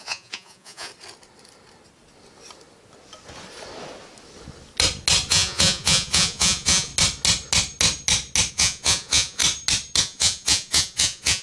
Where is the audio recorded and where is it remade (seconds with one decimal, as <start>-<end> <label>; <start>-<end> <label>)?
0.0-0.9 remade; 0.9-5.3 recorded; 5.3-6.9 remade; 6.9-8.5 recorded; 8.5-9.4 remade; 9.4-10.0 recorded; 10.0-11.4 remade